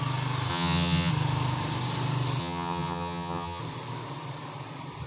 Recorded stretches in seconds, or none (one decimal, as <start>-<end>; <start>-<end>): 0.0-0.5; 1.1-2.4; 3.6-5.1